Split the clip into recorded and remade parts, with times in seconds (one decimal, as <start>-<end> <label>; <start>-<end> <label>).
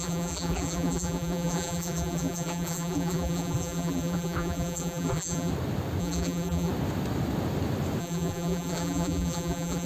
0.0-5.5 remade; 5.5-6.0 recorded; 6.0-6.7 remade; 6.7-8.0 recorded; 8.0-9.9 remade